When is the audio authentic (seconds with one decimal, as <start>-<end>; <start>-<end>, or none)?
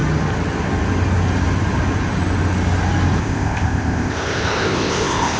0.0-3.2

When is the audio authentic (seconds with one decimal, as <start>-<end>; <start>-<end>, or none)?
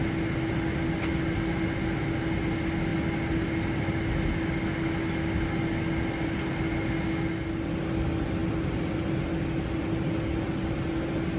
0.0-11.4